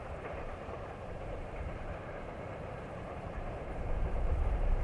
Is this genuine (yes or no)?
no